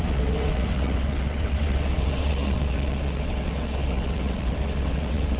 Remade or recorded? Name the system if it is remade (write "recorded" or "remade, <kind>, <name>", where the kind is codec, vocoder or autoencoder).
remade, vocoder, WaveNeXt